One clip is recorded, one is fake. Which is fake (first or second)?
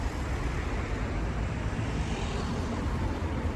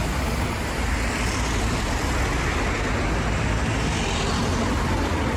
first